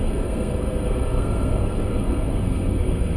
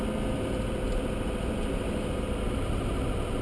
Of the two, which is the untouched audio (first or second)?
second